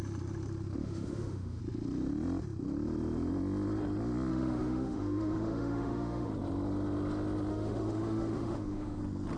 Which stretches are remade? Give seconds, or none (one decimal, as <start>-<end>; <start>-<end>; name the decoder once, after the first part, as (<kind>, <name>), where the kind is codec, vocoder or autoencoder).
0.8-1.6 (autoencoder, DAC-VAE); 4.3-6.3; 7.5-9.0